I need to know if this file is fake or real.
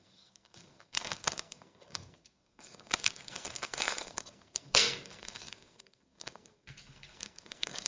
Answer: fake